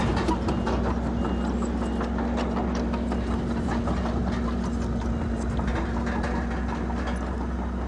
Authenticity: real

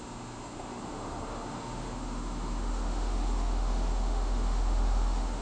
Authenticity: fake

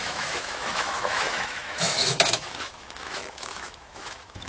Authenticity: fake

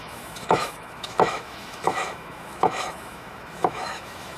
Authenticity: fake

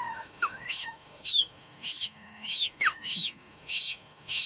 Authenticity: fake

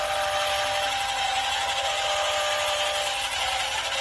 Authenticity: real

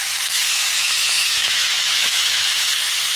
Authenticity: fake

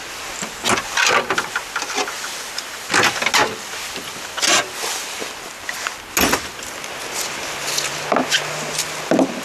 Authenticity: real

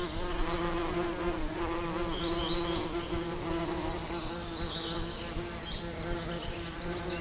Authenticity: real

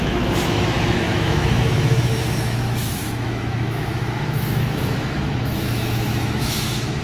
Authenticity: fake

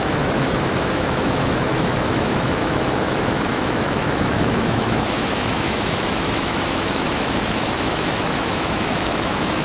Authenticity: fake